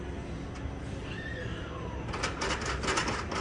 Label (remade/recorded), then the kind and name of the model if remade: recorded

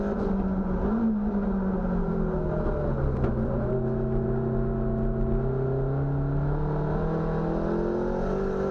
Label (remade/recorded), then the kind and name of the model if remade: recorded